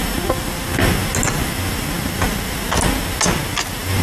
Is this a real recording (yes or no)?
yes